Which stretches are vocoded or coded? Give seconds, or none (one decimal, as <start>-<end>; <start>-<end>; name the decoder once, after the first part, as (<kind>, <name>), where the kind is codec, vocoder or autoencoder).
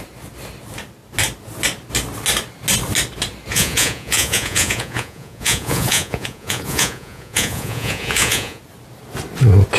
3.5-8.6 (vocoder, Vocos)